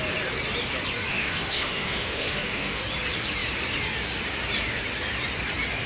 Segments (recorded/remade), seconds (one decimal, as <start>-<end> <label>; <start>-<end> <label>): 0.0-1.1 recorded; 1.1-2.8 remade; 2.8-5.9 recorded

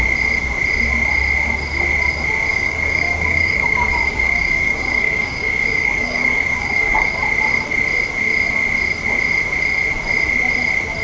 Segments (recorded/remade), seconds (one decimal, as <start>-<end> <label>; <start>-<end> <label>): 0.0-2.5 recorded; 2.5-7.1 remade; 7.1-11.0 recorded

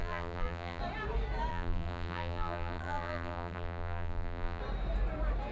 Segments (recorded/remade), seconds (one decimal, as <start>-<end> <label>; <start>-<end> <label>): 0.0-0.8 remade; 0.8-1.5 recorded; 1.5-4.6 remade; 4.6-5.5 recorded

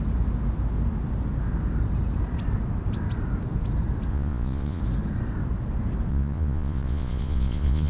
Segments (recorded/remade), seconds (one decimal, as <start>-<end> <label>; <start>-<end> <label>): 0.0-4.1 recorded; 4.1-4.8 remade; 4.8-6.1 recorded; 6.1-7.9 remade

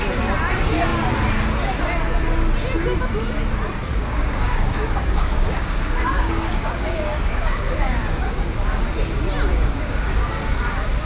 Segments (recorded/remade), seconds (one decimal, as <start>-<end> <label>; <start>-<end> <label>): 0.0-3.9 recorded; 3.9-8.8 remade; 8.8-9.5 recorded; 9.5-10.3 remade; 10.3-11.1 recorded